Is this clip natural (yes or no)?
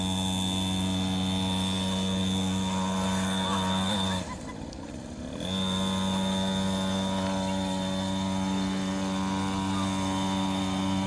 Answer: yes